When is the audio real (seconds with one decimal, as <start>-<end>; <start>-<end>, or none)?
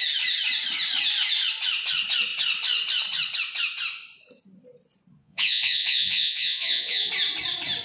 0.0-5.2; 7.1-7.8